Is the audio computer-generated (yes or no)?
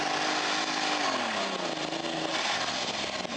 no